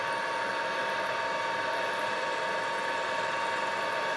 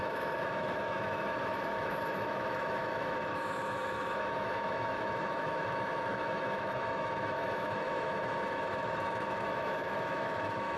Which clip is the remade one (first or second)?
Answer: second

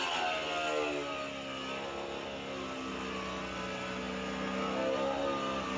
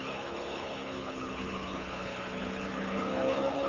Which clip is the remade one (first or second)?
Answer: second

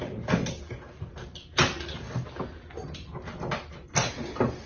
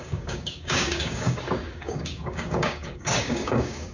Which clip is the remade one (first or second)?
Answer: second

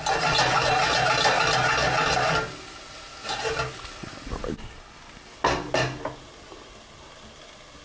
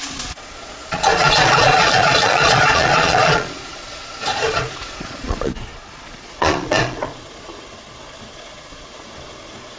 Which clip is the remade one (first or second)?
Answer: second